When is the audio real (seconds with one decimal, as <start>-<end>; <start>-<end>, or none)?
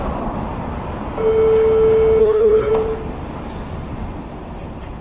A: 0.0-2.2; 2.7-5.0